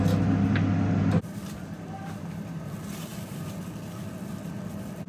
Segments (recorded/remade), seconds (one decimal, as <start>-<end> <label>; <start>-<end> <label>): 0.0-5.1 recorded